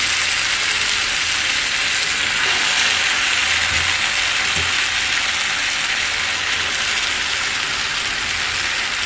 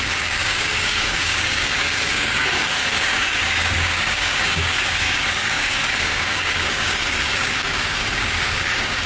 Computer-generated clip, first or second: second